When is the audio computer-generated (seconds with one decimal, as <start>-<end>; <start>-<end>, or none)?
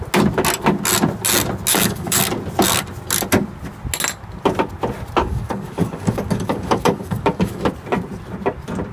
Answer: 1.7-2.2; 5.2-7.7